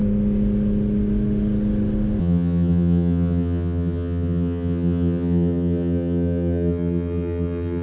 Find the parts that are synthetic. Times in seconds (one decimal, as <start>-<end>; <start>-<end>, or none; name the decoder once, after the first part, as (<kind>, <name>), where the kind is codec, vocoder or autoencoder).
2.2-7.8 (vocoder, HiFi-GAN)